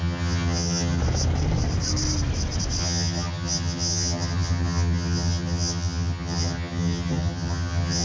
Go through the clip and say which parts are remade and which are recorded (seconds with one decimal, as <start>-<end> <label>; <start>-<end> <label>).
0.0-1.0 remade; 1.0-2.8 recorded; 2.8-8.0 remade